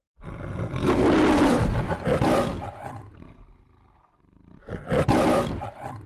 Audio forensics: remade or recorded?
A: recorded